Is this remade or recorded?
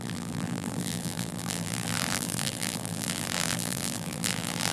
remade